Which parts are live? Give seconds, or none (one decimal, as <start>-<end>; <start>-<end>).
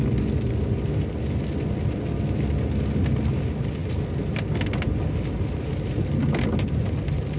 0.0-7.4